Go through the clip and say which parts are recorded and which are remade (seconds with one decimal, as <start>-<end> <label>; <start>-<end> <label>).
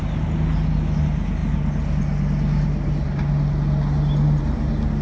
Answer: 0.0-5.0 recorded